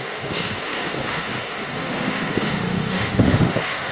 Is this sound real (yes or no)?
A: no